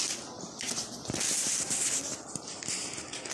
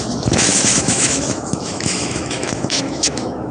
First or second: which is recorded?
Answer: first